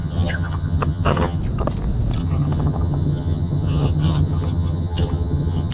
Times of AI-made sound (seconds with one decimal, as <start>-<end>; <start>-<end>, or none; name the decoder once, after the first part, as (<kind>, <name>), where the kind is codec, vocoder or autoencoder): 0.0-1.4 (vocoder, HiFi-GAN); 2.2-5.7